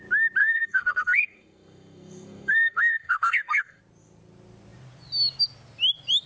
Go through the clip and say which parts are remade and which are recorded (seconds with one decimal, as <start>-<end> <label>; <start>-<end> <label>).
0.0-0.4 recorded; 0.4-3.8 remade; 3.8-6.3 recorded